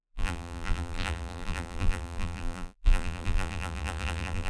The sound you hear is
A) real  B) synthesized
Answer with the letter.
B